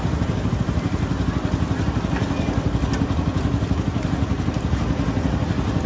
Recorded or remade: recorded